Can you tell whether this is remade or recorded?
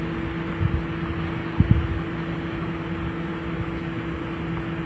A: recorded